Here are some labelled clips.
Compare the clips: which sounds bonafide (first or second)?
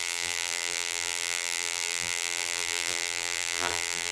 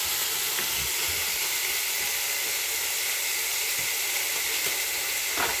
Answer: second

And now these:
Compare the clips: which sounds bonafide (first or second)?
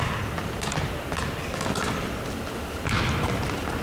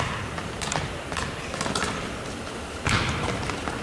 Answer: first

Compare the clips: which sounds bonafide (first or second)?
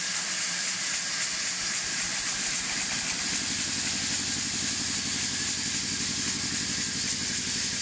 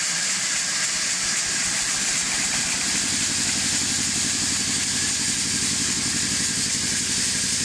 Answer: first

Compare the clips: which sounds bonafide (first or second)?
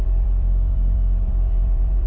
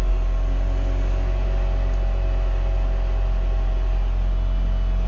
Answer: second